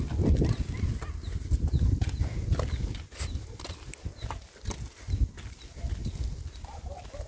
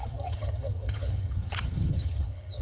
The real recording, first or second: first